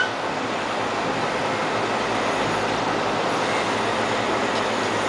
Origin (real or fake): real